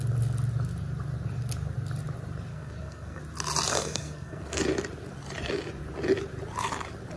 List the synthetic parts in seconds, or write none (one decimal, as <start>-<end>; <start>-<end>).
2.5-3.2; 3.7-4.6